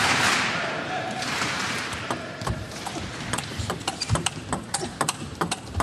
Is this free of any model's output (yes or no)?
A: no